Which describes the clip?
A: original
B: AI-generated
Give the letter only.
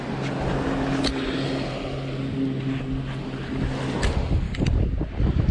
A